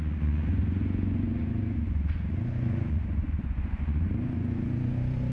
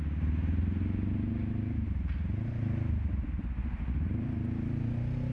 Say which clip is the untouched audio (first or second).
second